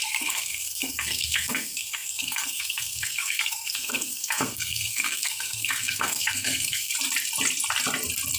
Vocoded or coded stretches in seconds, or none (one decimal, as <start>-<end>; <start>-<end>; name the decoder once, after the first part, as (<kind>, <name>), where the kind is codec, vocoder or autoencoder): 0.0-6.9 (codec, SNAC)